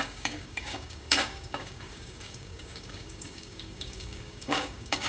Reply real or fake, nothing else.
fake